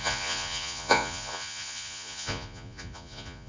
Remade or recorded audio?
remade